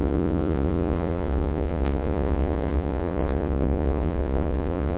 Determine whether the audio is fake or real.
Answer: fake